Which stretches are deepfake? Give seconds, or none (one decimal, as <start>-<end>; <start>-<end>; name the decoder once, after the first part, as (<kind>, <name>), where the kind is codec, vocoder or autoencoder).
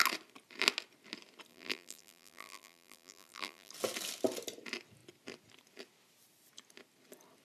1.5-3.7 (vocoder, BigVGAN v2)